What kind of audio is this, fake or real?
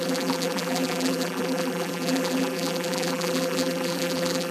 fake